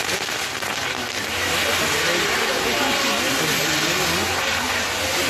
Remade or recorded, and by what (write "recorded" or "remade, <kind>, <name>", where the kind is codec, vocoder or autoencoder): recorded